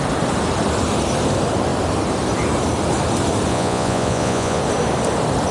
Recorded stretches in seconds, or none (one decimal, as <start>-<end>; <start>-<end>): 0.0-3.5; 4.6-5.5